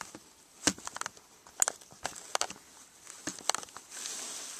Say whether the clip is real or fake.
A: real